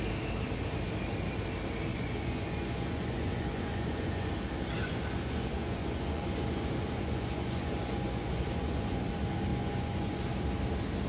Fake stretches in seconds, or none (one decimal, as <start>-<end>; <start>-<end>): 1.9-4.3; 4.8-9.1; 9.5-10.3